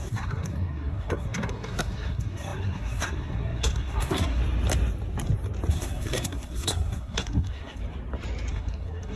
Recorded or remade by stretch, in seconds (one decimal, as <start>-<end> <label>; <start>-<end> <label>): 0.0-4.4 remade; 4.4-5.7 recorded; 5.7-7.8 remade; 7.8-8.5 recorded; 8.5-9.2 remade